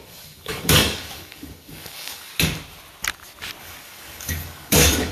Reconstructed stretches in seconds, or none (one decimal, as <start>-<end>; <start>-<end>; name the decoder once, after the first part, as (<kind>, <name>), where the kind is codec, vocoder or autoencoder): 0.0-2.3 (codec, DAC); 3.6-5.1